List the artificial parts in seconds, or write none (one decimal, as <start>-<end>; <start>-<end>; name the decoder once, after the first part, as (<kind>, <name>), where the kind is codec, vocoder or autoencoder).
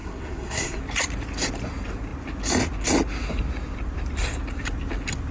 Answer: 0.0-0.8 (codec, SNAC)